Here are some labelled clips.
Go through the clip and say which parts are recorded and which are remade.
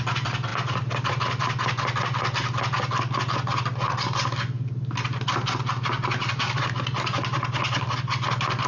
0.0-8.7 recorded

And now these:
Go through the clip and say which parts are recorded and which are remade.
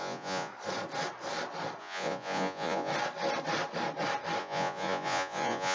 0.0-0.5 remade; 0.5-1.8 recorded; 1.8-2.9 remade; 2.9-4.4 recorded; 4.4-5.7 remade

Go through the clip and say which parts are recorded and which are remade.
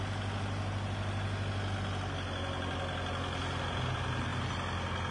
0.0-5.1 recorded